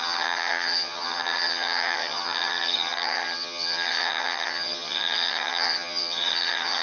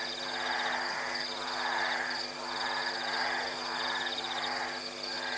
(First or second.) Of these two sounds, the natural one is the second